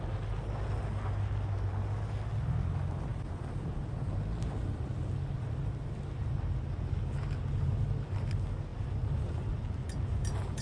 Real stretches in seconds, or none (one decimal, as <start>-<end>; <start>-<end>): 0.0-10.6